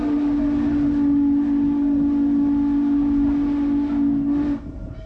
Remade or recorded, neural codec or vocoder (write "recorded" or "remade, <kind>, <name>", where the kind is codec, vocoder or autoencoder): recorded